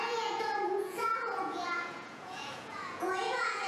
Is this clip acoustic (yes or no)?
no